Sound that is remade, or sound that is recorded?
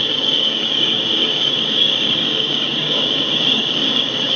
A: remade